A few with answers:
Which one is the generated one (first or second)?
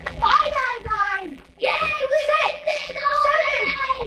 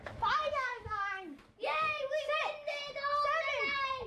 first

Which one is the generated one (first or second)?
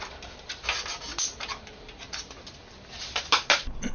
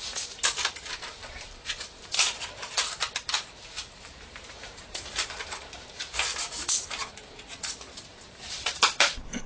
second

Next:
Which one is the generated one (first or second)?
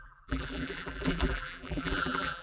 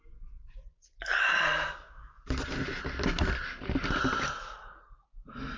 first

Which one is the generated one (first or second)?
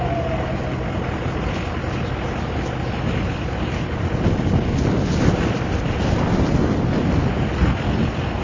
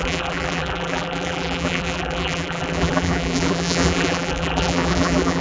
second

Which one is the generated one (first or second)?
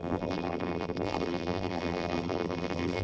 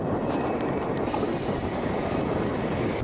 first